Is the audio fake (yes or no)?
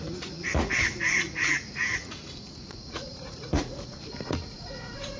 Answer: yes